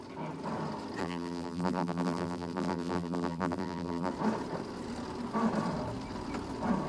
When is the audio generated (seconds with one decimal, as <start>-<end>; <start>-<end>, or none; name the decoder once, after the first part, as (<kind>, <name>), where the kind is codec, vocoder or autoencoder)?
1.0-4.1 (vocoder, BigVGAN v2)